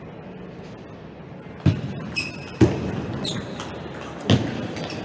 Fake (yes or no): no